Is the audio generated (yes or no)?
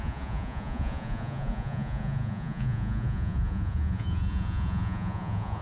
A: yes